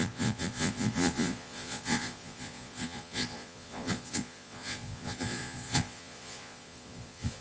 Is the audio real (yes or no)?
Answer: no